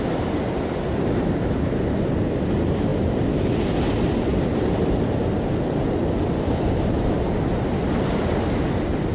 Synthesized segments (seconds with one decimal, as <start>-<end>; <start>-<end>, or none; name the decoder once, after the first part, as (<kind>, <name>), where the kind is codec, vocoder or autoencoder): none